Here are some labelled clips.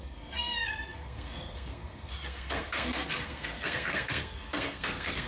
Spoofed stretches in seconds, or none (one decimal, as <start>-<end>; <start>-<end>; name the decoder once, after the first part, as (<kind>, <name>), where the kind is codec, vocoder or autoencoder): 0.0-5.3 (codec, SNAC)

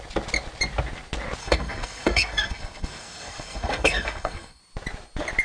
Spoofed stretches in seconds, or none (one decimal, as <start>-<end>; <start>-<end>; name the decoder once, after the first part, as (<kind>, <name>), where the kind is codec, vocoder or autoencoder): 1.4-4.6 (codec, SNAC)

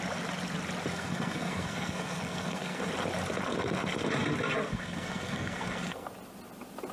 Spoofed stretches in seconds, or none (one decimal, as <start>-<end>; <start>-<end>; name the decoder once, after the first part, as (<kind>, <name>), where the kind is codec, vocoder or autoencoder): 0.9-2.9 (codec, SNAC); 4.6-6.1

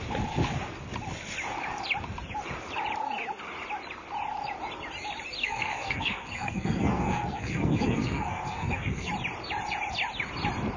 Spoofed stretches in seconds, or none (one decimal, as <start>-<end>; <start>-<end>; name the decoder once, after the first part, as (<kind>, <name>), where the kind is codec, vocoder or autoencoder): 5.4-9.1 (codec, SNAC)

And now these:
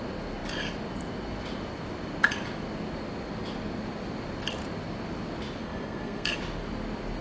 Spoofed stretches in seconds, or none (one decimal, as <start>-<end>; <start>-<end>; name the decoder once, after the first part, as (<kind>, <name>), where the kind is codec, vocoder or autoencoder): 5.6-6.4 (codec, SNAC)

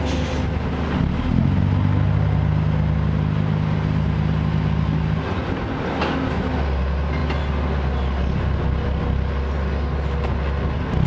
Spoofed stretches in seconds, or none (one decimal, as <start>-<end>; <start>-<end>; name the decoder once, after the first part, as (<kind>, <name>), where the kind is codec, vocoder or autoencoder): none

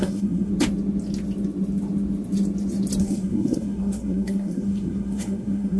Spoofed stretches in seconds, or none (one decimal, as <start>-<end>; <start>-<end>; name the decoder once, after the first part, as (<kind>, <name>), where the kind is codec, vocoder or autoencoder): 0.0-0.5 (codec, SNAC); 3.0-5.8

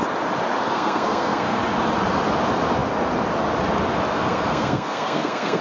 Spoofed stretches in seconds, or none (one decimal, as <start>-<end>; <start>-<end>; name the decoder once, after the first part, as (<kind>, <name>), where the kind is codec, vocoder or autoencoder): 0.7-1.6 (codec, SNAC); 4.1-5.6